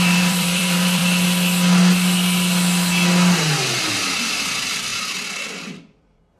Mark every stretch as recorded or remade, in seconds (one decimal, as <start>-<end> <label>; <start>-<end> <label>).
0.0-1.0 remade; 1.0-4.3 recorded; 4.3-4.9 remade; 4.9-5.8 recorded; 5.8-6.4 remade